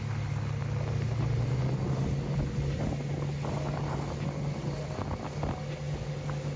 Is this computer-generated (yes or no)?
no